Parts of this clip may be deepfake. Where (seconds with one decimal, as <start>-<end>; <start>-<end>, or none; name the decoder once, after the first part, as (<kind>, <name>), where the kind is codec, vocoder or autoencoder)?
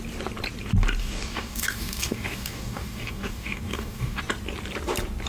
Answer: 1.0-4.2 (codec, DAC)